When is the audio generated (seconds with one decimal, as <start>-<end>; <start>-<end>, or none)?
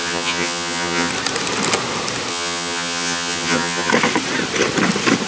0.0-1.1; 2.3-3.9